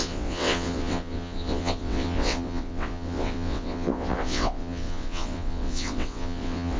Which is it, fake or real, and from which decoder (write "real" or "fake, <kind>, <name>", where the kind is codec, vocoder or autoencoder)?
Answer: fake, vocoder, WaveNeXt